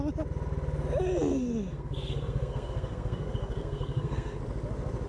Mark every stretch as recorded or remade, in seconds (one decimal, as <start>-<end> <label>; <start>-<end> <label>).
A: 0.0-1.3 recorded; 1.3-4.4 remade; 4.4-5.1 recorded